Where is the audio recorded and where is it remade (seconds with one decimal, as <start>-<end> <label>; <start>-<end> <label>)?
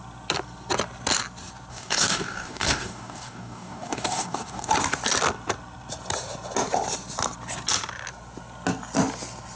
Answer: 0.0-1.7 recorded; 1.7-4.7 remade; 4.7-9.6 recorded